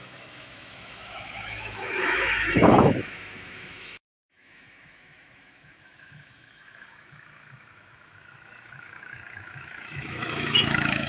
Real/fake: fake